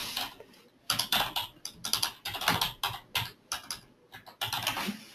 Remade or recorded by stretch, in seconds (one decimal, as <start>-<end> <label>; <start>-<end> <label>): 0.0-5.1 recorded